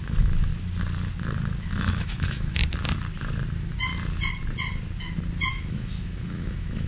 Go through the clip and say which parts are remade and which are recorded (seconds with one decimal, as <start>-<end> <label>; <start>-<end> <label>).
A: 0.0-0.5 remade; 0.5-1.6 recorded; 1.6-2.6 remade; 2.6-5.5 recorded; 5.5-6.9 remade